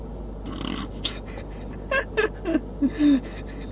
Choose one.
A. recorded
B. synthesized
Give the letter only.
A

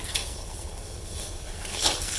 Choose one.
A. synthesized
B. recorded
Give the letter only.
A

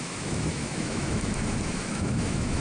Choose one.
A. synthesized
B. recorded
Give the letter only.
A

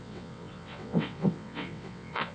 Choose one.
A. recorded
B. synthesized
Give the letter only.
B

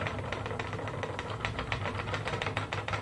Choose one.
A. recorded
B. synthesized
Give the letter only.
A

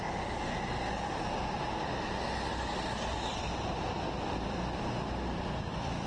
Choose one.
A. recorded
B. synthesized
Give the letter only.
A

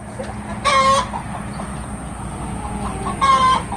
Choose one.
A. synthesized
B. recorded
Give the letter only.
B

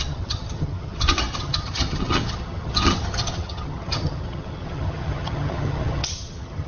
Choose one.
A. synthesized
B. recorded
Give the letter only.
A